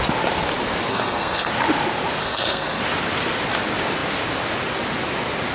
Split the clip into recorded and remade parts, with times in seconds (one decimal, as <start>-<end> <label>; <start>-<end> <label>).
0.0-0.9 recorded; 0.9-1.5 remade; 1.5-2.2 recorded; 2.2-2.8 remade; 2.8-5.5 recorded